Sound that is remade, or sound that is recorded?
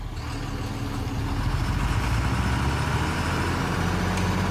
recorded